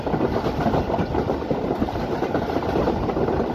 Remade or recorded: recorded